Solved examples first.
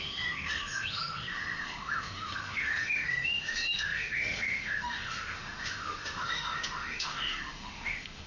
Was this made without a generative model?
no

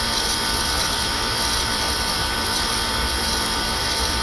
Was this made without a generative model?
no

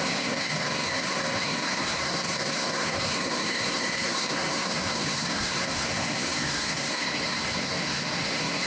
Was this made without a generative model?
no